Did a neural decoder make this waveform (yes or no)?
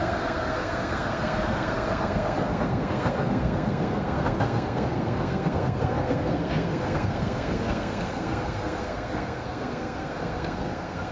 yes